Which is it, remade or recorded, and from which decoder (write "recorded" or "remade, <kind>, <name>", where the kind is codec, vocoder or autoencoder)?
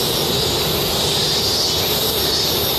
recorded